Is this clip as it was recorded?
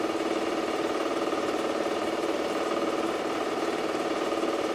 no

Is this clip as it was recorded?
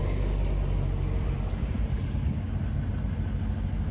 yes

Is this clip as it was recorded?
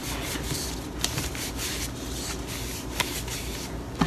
yes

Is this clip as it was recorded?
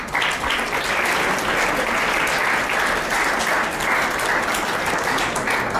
yes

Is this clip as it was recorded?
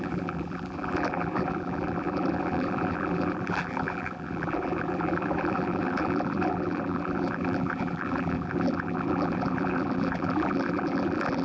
no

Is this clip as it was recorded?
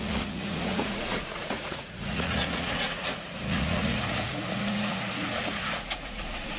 no